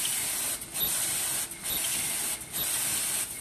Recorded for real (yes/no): yes